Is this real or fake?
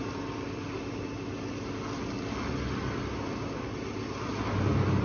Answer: real